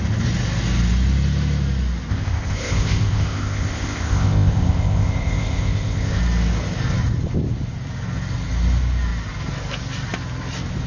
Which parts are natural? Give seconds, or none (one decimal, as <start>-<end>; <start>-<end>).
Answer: 0.0-2.1; 6.2-10.9